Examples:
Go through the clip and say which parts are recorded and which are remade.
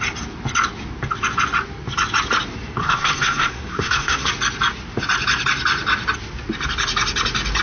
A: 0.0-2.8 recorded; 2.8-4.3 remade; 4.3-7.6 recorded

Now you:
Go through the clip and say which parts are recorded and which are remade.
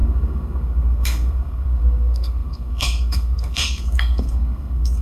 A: 0.0-5.0 remade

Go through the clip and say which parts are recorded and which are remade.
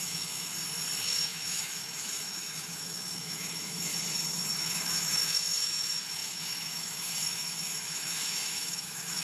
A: 0.0-0.5 remade; 0.5-1.0 recorded; 1.0-3.9 remade; 3.9-4.6 recorded; 4.6-9.2 remade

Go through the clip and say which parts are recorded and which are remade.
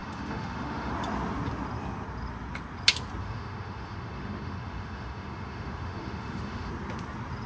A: 0.0-0.9 remade; 0.9-3.2 recorded; 3.2-6.7 remade; 6.7-7.5 recorded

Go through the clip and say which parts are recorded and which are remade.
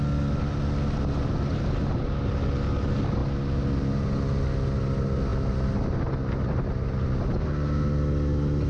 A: 0.0-8.7 recorded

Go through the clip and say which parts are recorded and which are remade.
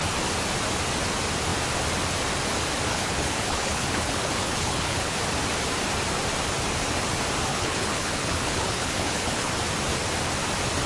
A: 0.0-2.9 recorded; 2.9-5.2 remade; 5.2-7.5 recorded; 7.5-9.5 remade; 9.5-10.9 recorded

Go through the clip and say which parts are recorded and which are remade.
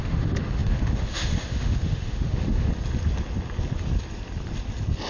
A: 0.0-2.7 remade; 2.7-5.1 recorded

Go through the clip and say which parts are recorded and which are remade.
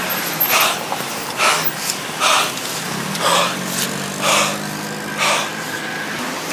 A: 0.0-6.5 recorded